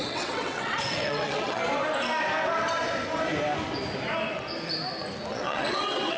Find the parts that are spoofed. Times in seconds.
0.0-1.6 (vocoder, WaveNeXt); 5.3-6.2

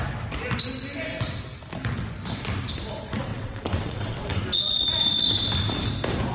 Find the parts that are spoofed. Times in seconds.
3.3-4.4 (vocoder, WaveNeXt)

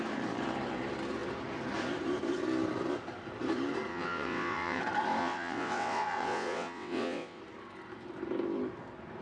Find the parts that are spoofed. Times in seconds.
3.9-4.8 (vocoder, WaveNeXt); 5.2-7.4

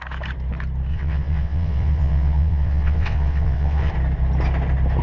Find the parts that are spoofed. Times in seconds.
0.9-3.9 (vocoder, WaveNeXt)